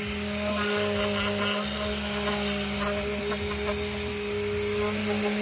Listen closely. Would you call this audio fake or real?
real